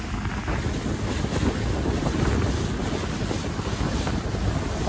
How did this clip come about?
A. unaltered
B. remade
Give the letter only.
A